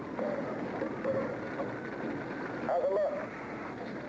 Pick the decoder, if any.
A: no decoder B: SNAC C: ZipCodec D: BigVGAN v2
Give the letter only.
A